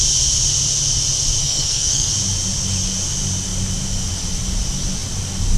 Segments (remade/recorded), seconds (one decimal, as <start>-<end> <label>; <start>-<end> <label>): 0.0-1.4 recorded; 1.4-2.1 remade; 2.1-5.6 recorded